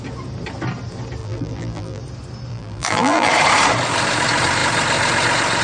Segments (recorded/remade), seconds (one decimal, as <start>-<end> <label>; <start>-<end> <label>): 0.0-1.2 recorded; 1.2-2.0 remade; 2.0-2.5 recorded; 2.5-3.3 remade; 3.3-5.6 recorded